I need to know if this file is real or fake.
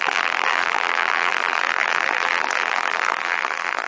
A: fake